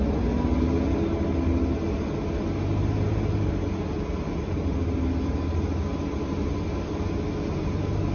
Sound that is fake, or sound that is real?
real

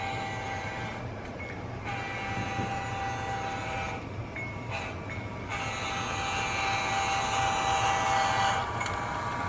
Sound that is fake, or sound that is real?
real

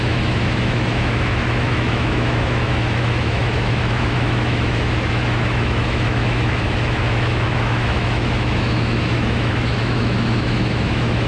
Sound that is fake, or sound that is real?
fake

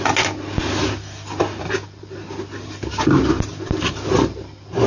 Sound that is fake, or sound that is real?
real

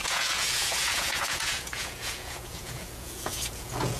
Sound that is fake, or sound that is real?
fake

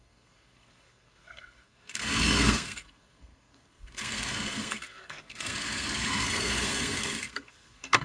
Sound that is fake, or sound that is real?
fake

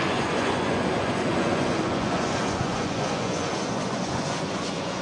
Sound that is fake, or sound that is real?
fake